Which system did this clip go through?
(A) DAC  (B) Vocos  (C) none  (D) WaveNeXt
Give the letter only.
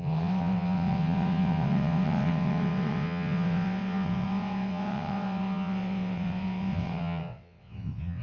D